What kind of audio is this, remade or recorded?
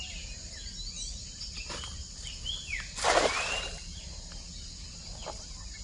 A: recorded